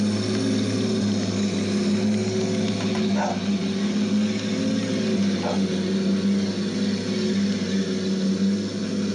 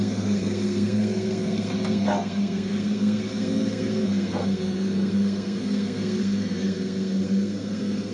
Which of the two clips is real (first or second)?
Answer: first